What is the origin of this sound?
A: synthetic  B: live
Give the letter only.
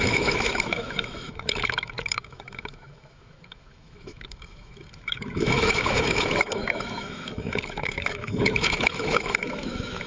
A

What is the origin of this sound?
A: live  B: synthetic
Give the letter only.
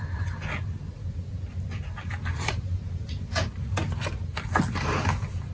A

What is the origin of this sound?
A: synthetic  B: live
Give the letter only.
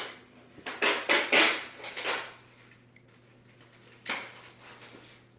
B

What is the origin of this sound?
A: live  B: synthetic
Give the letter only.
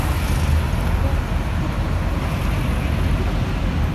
A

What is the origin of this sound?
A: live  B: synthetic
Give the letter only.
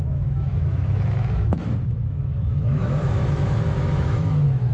B